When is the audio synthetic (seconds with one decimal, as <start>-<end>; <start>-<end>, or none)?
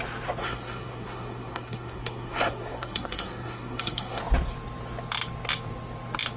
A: 0.4-4.2